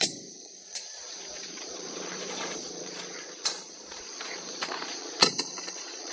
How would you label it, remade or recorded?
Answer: remade